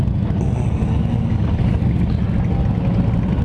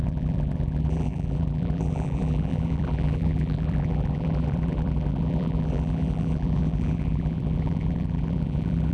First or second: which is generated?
second